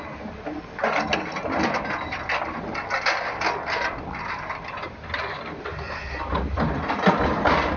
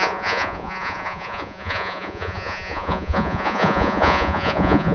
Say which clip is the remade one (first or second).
second